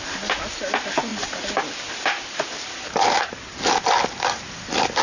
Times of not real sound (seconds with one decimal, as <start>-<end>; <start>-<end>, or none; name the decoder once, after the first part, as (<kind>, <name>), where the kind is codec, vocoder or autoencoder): none